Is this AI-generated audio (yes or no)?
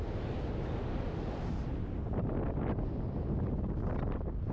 no